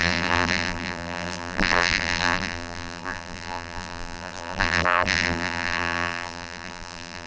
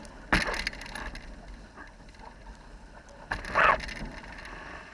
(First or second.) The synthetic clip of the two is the first